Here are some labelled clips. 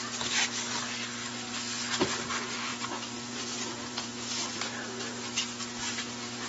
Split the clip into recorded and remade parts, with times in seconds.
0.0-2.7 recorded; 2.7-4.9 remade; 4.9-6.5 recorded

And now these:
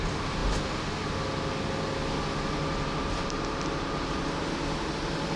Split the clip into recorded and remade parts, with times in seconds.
0.0-5.4 recorded

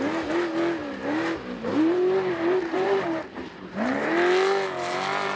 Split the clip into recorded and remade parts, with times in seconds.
0.0-0.8 recorded; 0.8-4.0 remade; 4.0-5.4 recorded

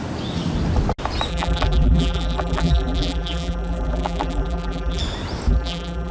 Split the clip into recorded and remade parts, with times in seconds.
0.0-1.3 recorded; 1.3-5.0 remade; 5.0-5.5 recorded; 5.5-6.1 remade

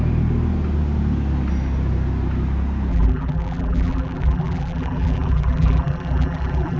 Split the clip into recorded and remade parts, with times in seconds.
0.0-2.9 recorded; 2.9-6.8 remade